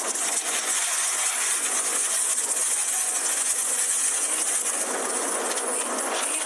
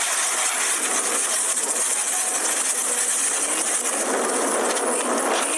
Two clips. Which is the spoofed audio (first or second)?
first